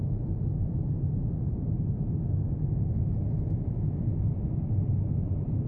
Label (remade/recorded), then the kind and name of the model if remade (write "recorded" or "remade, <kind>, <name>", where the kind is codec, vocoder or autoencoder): recorded